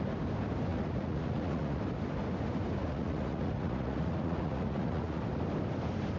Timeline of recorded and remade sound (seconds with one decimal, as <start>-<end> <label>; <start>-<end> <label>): 0.0-0.7 recorded; 0.7-1.8 remade; 1.8-2.8 recorded; 2.8-5.2 remade; 5.2-6.2 recorded

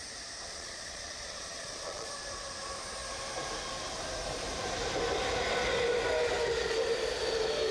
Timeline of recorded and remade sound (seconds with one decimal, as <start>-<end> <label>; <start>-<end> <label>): 0.0-0.5 recorded; 0.5-2.1 remade; 2.1-7.7 recorded

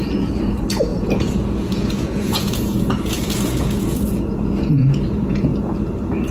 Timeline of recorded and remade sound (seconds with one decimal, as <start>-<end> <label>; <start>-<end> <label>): 0.0-5.5 remade; 5.5-6.3 recorded

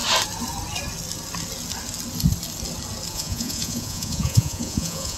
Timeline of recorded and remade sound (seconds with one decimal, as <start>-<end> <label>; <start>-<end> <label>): 0.0-3.1 recorded; 3.1-5.2 remade

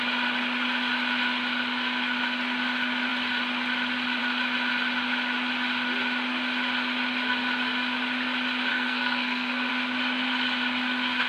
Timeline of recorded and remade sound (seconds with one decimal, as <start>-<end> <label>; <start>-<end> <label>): 0.0-8.7 recorded; 8.7-9.7 remade; 9.7-11.3 recorded

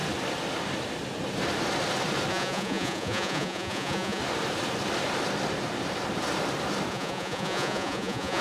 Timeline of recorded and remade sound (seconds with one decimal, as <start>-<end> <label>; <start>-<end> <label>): 0.0-2.3 recorded; 2.3-4.2 remade; 4.2-6.9 recorded; 6.9-8.4 remade